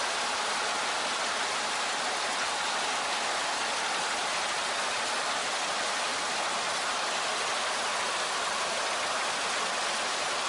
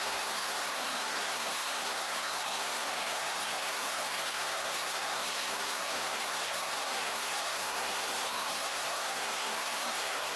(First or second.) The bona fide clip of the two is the first